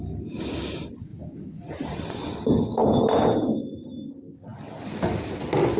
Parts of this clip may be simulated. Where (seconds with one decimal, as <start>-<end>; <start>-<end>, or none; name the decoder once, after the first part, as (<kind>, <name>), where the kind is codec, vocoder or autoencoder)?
none